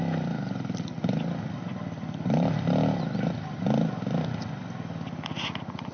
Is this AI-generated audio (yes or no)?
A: no